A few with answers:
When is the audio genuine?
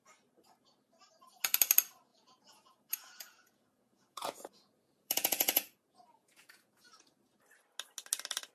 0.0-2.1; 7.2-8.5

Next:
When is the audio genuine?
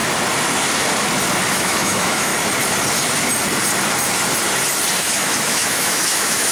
0.0-1.5; 2.3-5.0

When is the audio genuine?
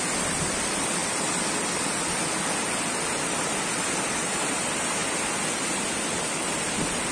0.0-7.1